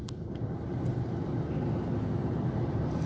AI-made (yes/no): no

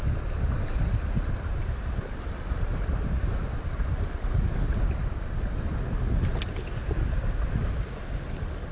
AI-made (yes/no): no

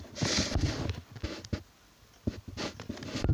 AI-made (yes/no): no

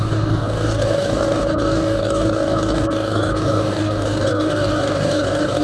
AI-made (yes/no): yes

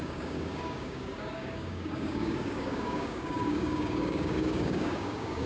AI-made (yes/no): yes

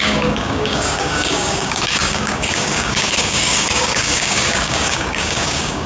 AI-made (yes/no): yes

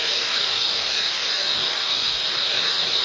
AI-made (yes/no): yes